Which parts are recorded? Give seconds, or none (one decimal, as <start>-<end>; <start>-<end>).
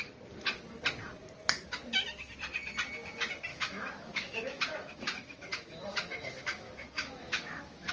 0.0-3.5